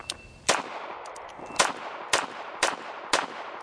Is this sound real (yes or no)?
yes